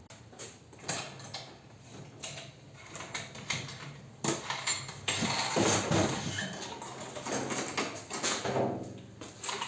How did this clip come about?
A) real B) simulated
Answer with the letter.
A